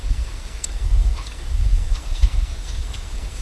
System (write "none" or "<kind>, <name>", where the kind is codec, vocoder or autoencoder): codec, SNAC